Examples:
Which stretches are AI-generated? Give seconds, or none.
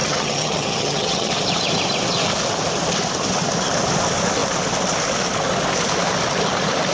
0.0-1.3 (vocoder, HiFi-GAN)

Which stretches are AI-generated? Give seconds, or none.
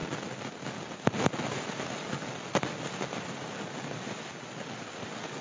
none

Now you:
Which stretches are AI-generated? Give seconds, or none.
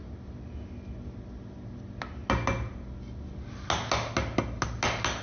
none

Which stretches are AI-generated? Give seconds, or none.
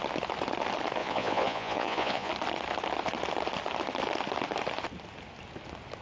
1.0-2.3 (vocoder, Vocos)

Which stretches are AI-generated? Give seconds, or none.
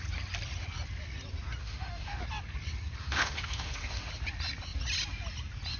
1.6-2.2 (autoencoder, DAC-VAE); 3.0-4.1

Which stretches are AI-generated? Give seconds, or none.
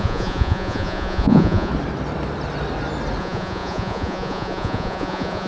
0.0-1.7 (vocoder, Vocos); 3.2-5.5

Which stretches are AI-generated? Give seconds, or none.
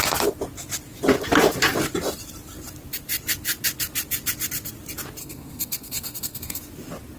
5.2-6.6 (codec, SNAC)